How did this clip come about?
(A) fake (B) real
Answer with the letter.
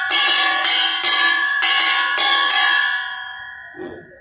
A